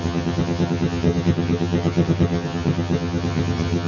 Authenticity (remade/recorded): remade